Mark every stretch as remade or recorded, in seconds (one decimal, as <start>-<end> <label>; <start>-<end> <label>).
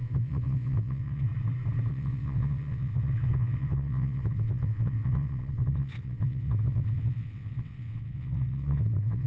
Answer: 0.0-1.3 remade; 1.3-1.9 recorded; 1.9-9.3 remade